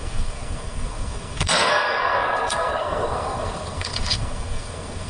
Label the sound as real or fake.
fake